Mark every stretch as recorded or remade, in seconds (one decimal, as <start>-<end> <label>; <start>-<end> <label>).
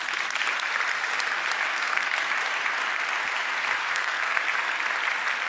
0.0-1.7 recorded; 1.7-2.3 remade; 2.3-3.8 recorded; 3.8-4.4 remade; 4.4-5.5 recorded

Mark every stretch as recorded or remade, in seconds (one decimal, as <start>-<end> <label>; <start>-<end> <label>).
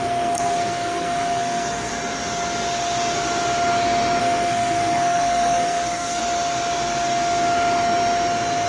0.0-1.9 remade; 1.9-4.2 recorded; 4.2-6.2 remade; 6.2-8.7 recorded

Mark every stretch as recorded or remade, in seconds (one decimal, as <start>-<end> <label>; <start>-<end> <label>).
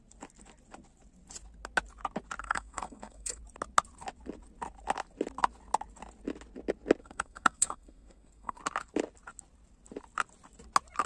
0.0-2.4 recorded; 2.4-3.4 remade; 3.4-7.0 recorded; 7.0-8.6 remade; 8.6-11.1 recorded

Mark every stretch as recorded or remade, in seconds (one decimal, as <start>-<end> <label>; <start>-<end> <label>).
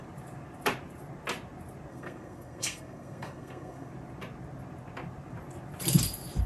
0.0-1.9 recorded; 1.9-3.9 remade; 3.9-6.5 recorded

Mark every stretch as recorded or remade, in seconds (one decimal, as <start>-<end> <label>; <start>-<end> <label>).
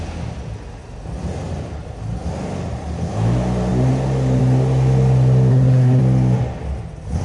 0.0-5.5 recorded; 5.5-6.0 remade; 6.0-7.2 recorded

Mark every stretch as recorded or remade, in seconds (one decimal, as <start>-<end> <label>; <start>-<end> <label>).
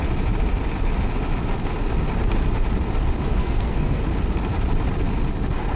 0.0-3.4 recorded; 3.4-4.0 remade; 4.0-5.8 recorded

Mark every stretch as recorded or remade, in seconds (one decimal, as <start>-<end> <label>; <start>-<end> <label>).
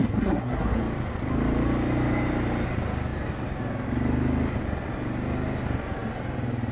0.0-0.8 remade; 0.8-6.7 recorded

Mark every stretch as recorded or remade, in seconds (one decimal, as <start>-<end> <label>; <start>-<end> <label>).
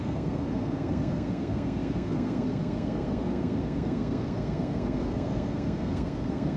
0.0-6.6 remade